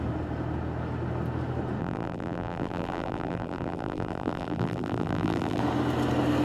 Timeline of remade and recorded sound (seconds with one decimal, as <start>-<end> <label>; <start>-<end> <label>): 0.0-1.8 recorded; 1.8-5.6 remade; 5.6-6.4 recorded